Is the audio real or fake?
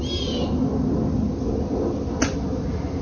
real